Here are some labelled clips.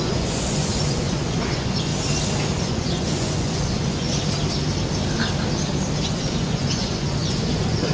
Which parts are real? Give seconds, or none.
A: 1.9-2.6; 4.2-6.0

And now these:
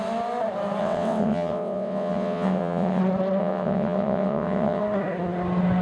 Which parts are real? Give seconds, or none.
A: 0.0-0.8; 3.0-3.4; 4.8-5.8

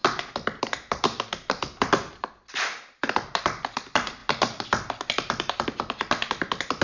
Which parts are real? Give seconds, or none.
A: 0.0-0.6

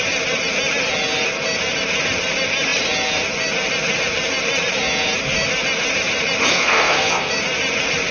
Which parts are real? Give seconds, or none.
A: 0.0-6.5; 7.3-8.1

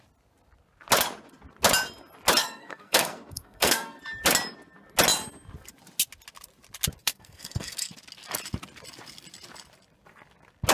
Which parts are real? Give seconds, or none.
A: 0.0-2.4; 4.0-7.0; 7.9-10.7

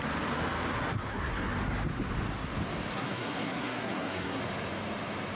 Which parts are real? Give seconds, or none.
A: 0.0-0.9; 1.5-2.9; 4.4-5.4

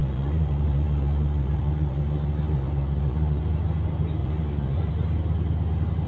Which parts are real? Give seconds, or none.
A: 3.4-4.2; 4.9-6.1

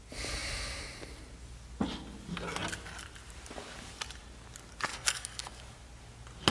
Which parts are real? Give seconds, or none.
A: 0.0-4.9; 5.6-6.5